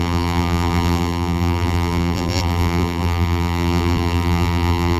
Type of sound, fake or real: fake